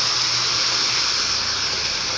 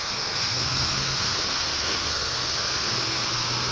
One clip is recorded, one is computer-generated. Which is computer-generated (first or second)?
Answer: second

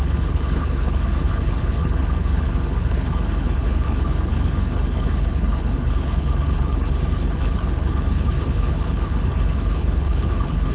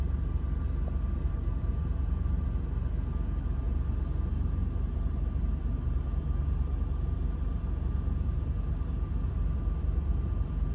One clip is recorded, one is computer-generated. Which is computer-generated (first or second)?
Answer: first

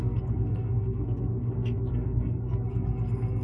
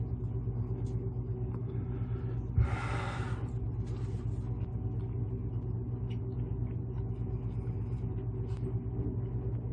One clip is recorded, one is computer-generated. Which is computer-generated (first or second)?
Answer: first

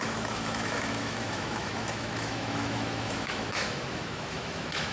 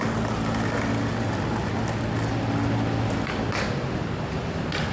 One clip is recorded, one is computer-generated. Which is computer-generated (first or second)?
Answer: first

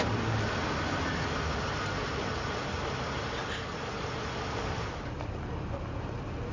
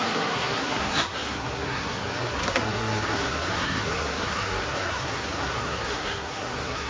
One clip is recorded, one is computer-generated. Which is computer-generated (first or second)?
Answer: second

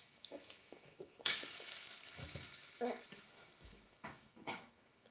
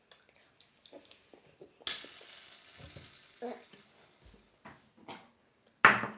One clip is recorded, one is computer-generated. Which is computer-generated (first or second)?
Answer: first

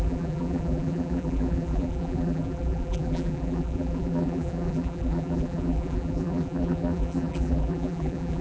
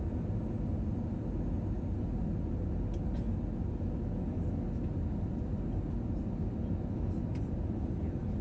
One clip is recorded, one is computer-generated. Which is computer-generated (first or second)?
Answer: first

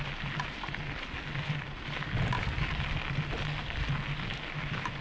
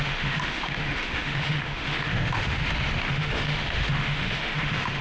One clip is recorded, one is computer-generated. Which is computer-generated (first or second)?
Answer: second